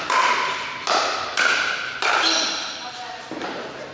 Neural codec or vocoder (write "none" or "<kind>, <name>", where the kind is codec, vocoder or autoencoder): none